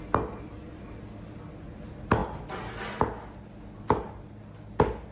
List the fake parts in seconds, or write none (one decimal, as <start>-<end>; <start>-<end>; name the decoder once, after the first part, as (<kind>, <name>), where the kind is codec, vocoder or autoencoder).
none